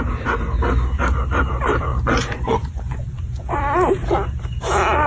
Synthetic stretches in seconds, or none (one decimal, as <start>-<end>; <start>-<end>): 1.9-3.6